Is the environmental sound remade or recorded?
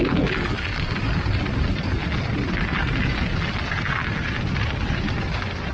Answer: recorded